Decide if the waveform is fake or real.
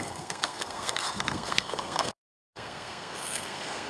fake